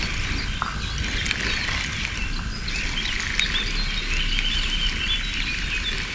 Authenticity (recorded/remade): recorded